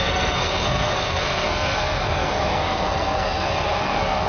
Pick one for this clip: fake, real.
fake